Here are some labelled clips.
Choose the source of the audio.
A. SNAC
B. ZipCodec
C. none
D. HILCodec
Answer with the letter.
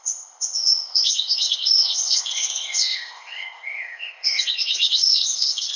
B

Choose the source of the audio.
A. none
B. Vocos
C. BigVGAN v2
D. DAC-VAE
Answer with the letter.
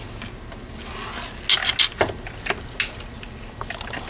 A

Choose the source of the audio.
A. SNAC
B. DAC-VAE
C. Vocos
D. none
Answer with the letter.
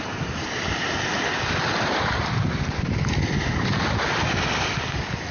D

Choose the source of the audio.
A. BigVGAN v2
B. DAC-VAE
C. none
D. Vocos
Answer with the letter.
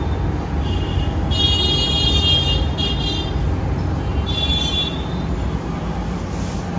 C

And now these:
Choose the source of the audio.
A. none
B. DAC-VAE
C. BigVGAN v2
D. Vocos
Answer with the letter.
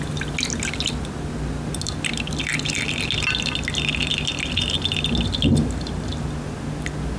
A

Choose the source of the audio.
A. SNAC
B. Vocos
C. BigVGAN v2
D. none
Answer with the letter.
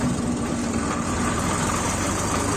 C